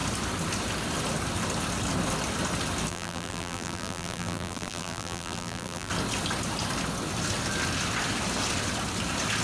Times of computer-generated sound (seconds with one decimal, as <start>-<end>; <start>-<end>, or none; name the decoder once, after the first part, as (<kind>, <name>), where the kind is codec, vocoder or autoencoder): 2.9-5.9 (vocoder, BigVGAN v2)